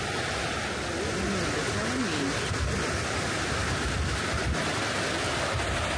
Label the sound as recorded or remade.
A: recorded